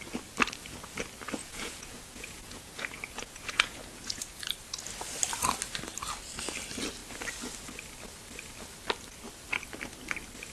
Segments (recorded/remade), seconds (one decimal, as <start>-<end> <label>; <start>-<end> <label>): 0.0-1.4 recorded; 1.4-4.4 remade; 4.4-10.5 recorded